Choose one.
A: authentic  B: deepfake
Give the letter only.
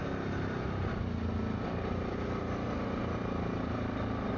A